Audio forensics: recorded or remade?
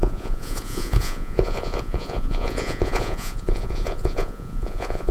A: remade